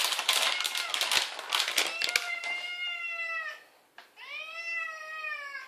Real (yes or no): yes